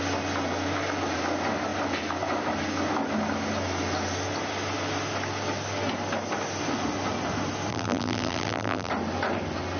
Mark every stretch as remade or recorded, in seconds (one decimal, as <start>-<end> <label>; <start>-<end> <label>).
0.0-7.7 recorded; 7.7-8.9 remade; 8.9-9.8 recorded